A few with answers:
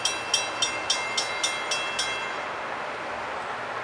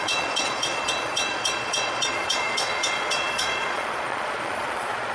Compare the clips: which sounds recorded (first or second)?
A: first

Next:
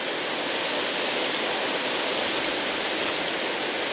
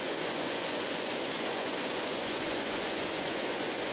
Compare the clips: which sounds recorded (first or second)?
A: first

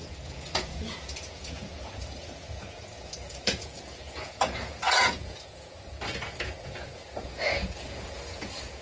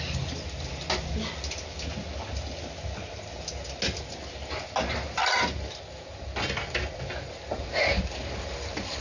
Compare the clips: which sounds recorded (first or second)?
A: second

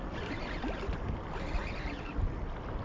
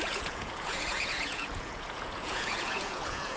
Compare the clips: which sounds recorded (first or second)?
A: first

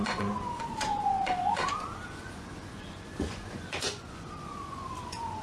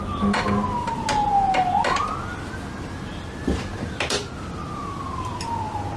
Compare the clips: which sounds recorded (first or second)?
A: second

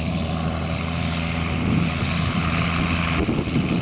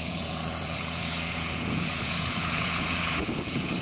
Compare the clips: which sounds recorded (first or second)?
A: first